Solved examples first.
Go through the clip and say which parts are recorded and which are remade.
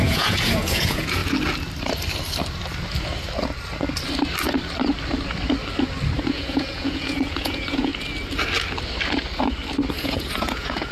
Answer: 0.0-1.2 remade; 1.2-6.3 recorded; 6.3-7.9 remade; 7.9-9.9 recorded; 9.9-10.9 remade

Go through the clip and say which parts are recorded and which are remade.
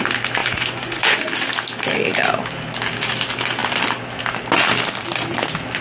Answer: 0.0-0.4 recorded; 0.4-1.2 remade; 1.2-5.8 recorded